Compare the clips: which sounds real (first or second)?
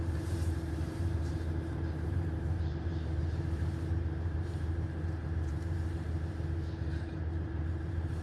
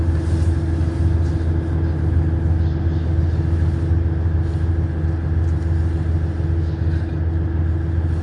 second